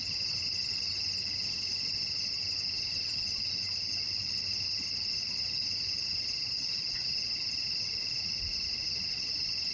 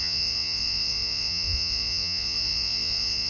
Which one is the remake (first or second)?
second